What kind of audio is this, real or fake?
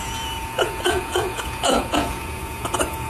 fake